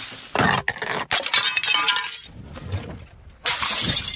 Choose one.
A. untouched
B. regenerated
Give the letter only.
A